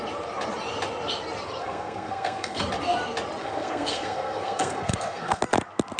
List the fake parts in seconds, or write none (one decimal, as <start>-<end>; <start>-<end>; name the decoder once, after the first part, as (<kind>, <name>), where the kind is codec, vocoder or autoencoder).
1.6-2.6 (codec, SNAC); 3.4-5.4